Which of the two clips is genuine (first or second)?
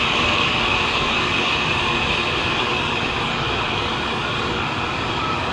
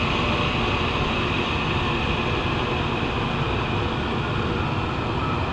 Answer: second